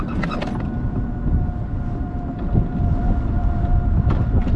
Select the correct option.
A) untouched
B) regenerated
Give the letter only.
A